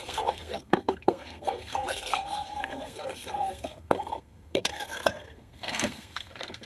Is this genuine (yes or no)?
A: no